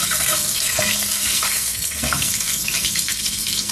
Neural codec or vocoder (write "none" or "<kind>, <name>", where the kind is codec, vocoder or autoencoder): codec, SNAC